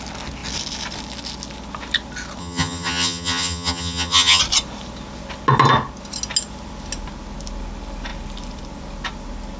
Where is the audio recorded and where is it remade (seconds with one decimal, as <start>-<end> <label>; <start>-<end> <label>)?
0.0-2.4 recorded; 2.4-4.4 remade; 4.4-9.6 recorded